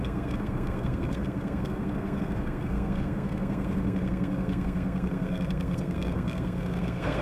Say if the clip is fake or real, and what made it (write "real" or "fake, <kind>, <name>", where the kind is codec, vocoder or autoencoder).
fake, codec, SNAC